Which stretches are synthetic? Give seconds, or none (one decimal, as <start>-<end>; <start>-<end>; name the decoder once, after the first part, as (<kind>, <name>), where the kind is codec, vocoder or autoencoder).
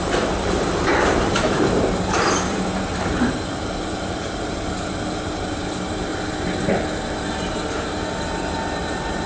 0.0-6.1 (vocoder, BigVGAN v2); 6.6-9.3